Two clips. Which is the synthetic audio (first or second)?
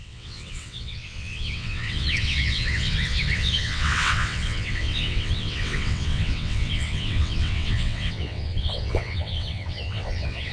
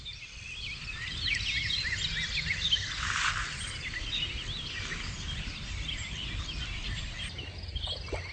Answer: first